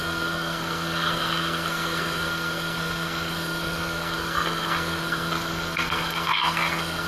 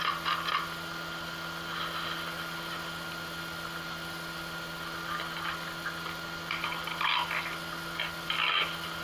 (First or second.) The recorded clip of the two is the second